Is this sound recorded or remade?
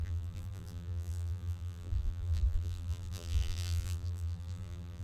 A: remade